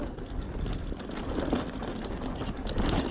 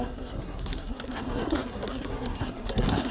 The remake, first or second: second